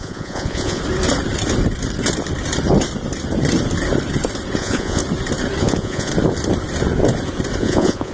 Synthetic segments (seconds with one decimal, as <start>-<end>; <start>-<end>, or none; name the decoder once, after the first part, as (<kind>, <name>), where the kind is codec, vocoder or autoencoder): 0.0-0.8 (vocoder, Vocos); 4.6-5.0; 5.6-6.1; 7.6-8.1